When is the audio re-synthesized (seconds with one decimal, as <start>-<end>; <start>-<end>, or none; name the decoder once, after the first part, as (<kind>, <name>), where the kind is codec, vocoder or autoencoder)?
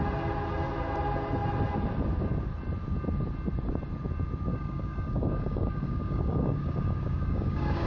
4.5-7.9 (codec, DAC)